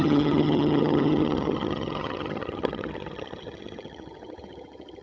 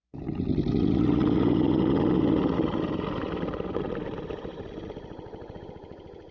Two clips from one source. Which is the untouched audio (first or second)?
second